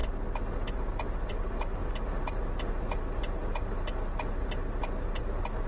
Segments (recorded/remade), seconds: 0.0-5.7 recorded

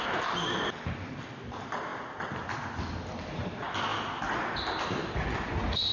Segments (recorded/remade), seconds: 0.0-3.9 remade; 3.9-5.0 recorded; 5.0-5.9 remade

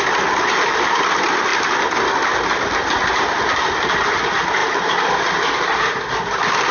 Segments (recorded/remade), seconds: 0.0-2.8 recorded; 2.8-3.8 remade; 3.8-6.7 recorded